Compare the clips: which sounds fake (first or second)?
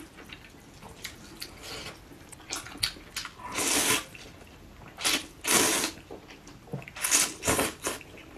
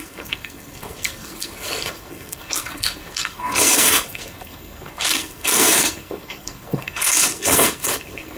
second